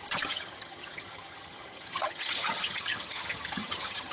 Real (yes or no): no